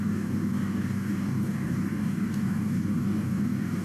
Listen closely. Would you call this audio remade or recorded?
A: remade